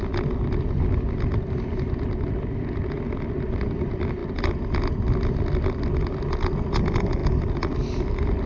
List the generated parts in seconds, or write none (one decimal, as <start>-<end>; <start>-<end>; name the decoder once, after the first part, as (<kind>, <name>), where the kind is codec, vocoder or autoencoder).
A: none